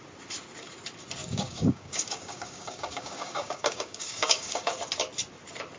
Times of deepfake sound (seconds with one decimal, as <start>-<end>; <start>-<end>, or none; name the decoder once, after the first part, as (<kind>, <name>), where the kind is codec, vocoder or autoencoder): 1.2-4.7 (codec, DAC)

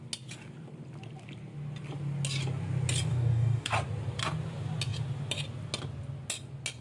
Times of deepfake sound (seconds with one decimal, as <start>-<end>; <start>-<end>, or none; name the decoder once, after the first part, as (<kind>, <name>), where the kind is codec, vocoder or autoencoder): 3.1-3.7 (codec, DAC)

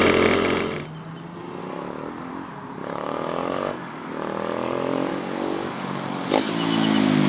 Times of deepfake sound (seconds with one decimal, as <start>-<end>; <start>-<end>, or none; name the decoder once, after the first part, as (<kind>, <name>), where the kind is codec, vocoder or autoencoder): 1.6-2.3 (codec, DAC); 2.8-4.1; 5.1-6.5

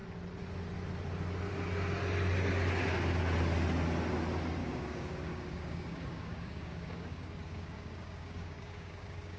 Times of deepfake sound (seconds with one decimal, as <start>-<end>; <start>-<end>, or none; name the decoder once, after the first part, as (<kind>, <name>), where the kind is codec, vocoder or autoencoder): 4.6-9.4 (codec, DAC)

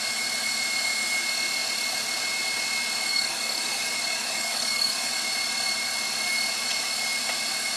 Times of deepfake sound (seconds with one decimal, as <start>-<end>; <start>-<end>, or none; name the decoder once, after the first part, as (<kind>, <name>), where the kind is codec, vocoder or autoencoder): 3.1-5.1 (codec, DAC)